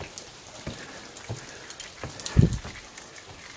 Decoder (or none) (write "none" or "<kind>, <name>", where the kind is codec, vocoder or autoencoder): none